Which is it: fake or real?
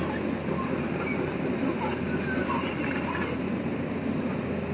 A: real